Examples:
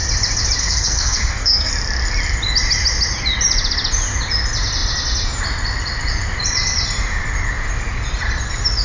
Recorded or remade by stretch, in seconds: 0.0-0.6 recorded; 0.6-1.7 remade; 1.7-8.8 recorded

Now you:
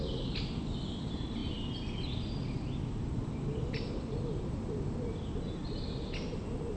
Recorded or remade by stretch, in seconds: 0.0-6.8 recorded

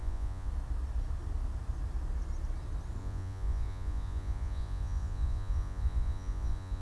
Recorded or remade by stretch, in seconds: 0.0-0.5 remade; 0.5-3.0 recorded; 3.0-6.8 remade

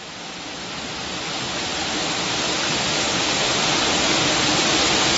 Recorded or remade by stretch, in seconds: 0.0-5.2 recorded

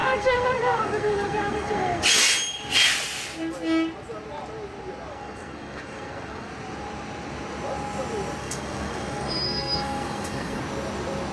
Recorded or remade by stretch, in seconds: 0.0-2.0 remade; 2.0-5.1 recorded; 5.1-6.5 remade; 6.5-8.4 recorded; 8.4-10.6 remade; 10.6-11.3 recorded

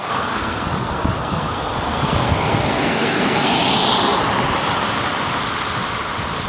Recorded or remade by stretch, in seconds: 0.0-3.5 remade; 3.5-6.5 recorded

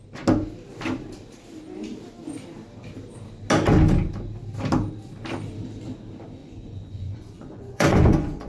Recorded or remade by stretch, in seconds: 0.0-6.4 recorded; 6.4-8.5 remade